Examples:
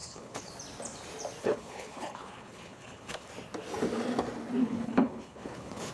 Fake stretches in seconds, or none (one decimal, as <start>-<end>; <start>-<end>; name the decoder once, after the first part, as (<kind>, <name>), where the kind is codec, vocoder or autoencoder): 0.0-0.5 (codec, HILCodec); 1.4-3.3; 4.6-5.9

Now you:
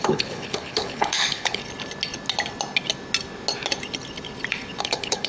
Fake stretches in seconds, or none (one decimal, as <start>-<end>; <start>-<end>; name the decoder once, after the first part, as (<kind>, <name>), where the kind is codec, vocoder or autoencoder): 0.0-1.6 (codec, HILCodec); 4.8-5.3

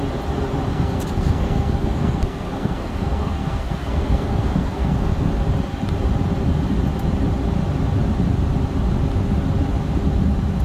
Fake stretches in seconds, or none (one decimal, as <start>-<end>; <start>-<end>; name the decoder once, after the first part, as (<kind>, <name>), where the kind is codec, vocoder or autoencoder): 0.7-5.3 (codec, SNAC)

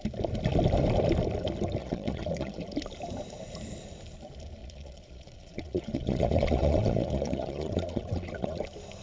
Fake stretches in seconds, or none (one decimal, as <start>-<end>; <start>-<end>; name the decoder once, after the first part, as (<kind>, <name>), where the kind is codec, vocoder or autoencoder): 1.8-2.6 (vocoder, Vocos); 4.6-8.6

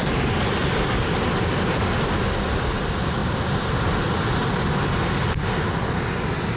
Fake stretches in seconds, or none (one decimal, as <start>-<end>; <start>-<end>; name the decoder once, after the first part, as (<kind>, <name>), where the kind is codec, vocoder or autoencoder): none

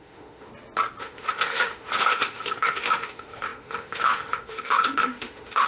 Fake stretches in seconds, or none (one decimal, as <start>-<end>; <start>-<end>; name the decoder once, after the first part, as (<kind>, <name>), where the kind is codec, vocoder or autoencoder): 0.0-0.5 (autoencoder, DAC-VAE); 1.0-5.7